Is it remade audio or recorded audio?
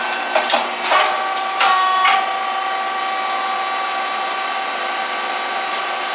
recorded